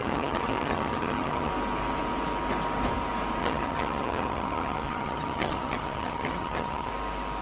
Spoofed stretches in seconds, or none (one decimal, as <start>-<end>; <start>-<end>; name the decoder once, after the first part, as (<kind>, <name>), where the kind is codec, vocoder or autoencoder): 0.0-1.5 (vocoder, HiFi-GAN); 3.4-6.9